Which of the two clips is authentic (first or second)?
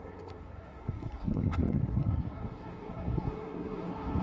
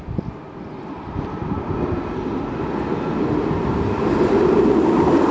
second